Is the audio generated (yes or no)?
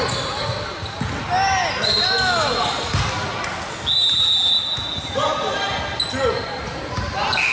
no